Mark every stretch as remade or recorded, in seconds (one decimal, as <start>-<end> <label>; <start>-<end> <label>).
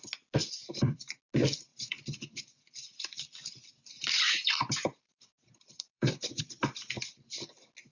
0.0-1.7 recorded; 1.7-6.4 remade; 6.4-7.9 recorded